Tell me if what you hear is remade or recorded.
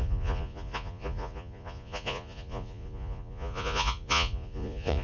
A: remade